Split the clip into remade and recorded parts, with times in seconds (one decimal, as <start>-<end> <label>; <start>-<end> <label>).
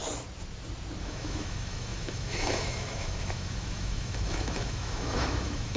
0.0-1.0 recorded; 1.0-5.8 remade